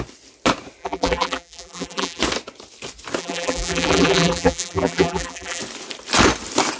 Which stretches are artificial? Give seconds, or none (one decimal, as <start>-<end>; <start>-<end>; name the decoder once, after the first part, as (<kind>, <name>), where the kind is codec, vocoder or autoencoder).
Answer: 0.8-2.2 (vocoder, BigVGAN v2); 3.2-5.6